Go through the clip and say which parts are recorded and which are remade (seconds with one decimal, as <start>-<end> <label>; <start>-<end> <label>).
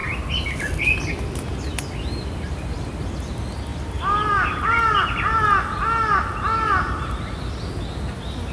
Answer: 0.0-8.5 recorded